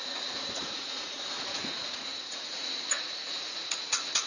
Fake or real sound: fake